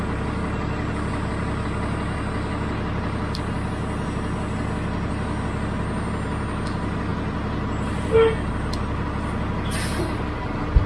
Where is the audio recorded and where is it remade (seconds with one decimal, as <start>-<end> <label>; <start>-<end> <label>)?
0.0-10.9 recorded